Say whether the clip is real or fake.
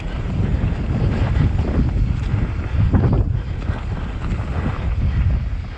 real